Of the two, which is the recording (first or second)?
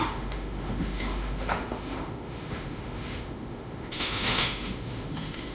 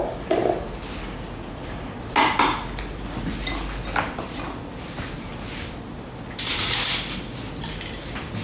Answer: second